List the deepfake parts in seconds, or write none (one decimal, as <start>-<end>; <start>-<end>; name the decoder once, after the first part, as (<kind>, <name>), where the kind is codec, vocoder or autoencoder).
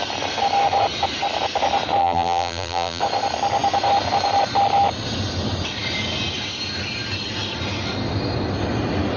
2.0-3.0 (vocoder, BigVGAN v2)